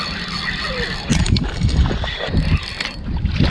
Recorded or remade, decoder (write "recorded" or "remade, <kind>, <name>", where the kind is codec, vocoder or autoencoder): recorded